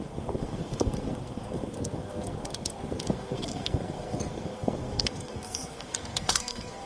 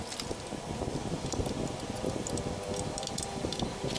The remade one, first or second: first